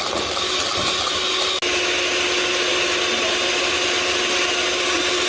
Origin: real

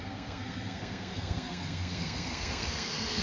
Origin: fake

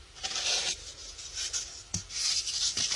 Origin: real